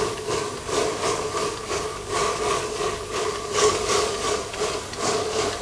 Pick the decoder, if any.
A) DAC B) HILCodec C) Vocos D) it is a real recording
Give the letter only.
A